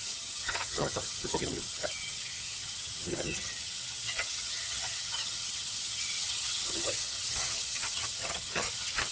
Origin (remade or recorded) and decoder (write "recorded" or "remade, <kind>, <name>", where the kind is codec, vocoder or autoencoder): remade, vocoder, HiFi-GAN